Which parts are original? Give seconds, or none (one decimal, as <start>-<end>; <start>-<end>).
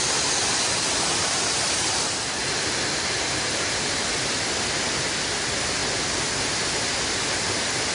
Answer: 0.0-7.9